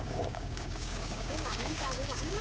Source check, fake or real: fake